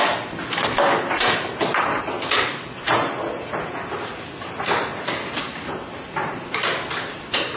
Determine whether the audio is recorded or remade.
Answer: recorded